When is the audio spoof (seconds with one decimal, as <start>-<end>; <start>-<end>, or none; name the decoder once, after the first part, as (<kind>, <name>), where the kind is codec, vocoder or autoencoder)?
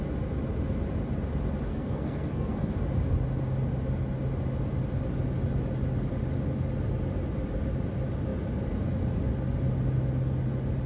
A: 1.7-2.7 (codec, SNAC)